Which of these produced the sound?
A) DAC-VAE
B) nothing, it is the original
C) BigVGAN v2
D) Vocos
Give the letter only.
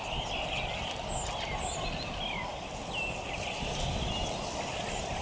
B